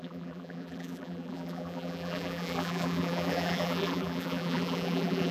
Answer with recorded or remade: remade